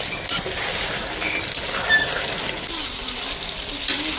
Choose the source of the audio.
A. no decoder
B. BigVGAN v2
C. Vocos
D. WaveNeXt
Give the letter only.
A